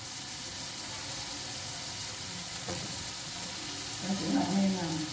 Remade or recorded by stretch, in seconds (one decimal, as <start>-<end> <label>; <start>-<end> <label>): 0.0-2.4 recorded; 2.4-3.6 remade; 3.6-5.1 recorded